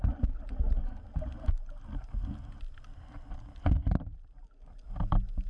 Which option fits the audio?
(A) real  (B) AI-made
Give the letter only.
A